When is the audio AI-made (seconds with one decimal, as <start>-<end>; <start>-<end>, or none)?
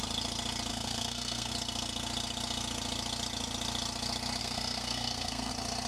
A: 0.7-1.5; 4.4-5.5